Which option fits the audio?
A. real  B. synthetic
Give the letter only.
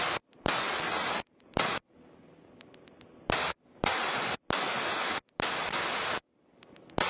A